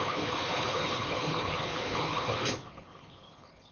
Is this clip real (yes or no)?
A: no